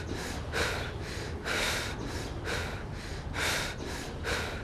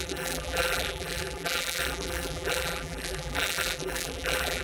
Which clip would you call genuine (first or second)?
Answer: first